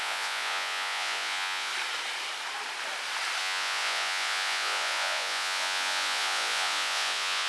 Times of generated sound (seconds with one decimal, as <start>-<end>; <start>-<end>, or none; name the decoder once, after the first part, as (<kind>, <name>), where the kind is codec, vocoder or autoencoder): 0.0-1.7 (vocoder, Vocos); 3.4-7.5